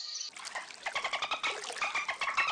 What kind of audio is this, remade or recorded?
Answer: recorded